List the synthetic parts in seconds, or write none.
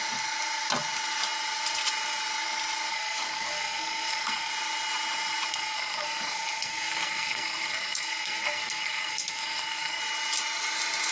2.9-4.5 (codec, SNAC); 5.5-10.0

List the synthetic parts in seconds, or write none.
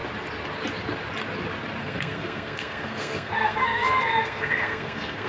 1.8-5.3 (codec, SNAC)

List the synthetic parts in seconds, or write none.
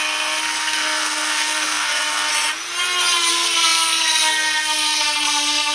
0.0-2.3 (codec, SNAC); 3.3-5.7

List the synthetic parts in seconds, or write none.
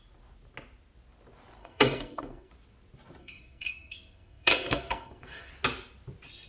1.6-2.5 (codec, SNAC); 3.2-5.5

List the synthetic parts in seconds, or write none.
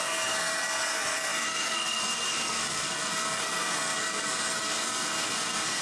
0.0-5.8 (codec, SNAC)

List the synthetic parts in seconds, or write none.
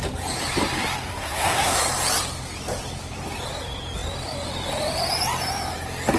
1.1-1.8 (codec, SNAC)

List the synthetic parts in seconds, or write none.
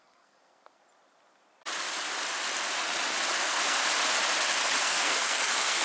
0.0-0.8 (codec, SNAC); 3.4-3.8; 4.8-5.8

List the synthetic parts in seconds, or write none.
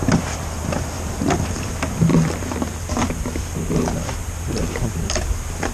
none